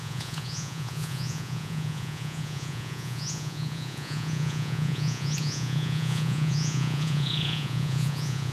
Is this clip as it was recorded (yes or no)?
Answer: no